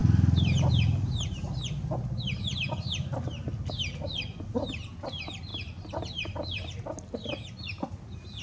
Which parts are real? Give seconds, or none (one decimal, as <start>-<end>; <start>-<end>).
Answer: 0.7-8.4